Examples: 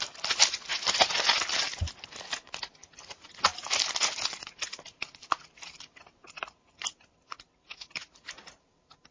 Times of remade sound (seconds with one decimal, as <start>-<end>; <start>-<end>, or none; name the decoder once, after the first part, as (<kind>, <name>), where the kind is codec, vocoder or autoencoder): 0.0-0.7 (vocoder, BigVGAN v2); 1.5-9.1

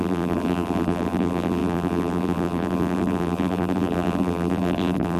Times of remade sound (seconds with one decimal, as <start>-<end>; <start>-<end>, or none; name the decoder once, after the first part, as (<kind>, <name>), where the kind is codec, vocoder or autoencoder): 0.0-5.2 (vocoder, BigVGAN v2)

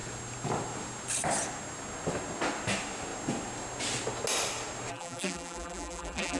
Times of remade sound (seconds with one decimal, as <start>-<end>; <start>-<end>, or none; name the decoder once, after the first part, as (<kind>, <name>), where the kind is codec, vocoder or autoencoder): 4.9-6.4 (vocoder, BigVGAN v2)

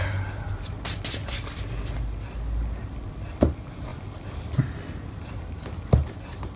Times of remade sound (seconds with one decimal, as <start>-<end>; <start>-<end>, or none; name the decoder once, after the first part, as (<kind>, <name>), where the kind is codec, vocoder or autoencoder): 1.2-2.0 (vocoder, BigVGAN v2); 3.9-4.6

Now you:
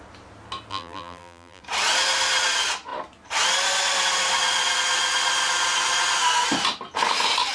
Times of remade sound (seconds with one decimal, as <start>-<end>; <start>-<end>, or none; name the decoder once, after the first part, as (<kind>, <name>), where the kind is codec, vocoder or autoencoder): 0.7-1.6 (vocoder, BigVGAN v2)

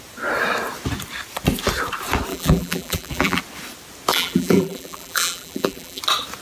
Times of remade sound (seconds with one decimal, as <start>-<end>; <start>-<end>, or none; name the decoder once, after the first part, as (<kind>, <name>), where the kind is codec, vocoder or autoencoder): 2.3-3.4 (vocoder, BigVGAN v2); 4.1-6.0